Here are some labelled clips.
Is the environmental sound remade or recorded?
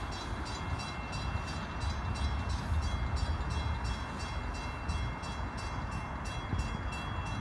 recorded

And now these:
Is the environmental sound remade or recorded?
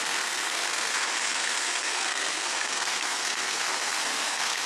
remade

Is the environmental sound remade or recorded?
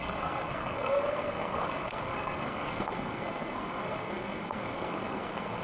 remade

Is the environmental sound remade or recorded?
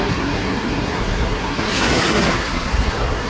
remade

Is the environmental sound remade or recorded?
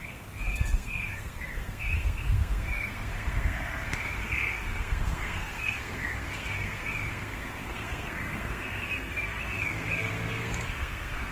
remade